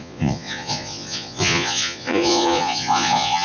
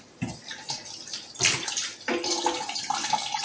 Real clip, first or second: second